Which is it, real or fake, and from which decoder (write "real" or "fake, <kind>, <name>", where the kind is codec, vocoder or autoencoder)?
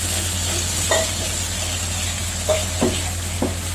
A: real